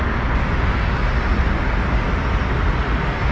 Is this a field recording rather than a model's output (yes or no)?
yes